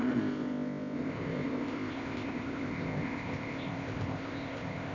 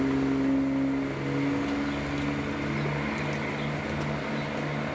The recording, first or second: second